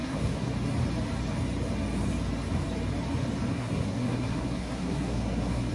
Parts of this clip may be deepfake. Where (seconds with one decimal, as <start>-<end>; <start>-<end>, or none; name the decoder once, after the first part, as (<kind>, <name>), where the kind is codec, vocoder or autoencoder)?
0.0-0.5 (codec, SNAC); 3.5-5.7